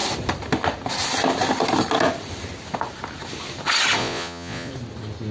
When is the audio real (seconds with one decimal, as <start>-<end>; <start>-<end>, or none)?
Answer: 0.0-4.0; 4.7-5.3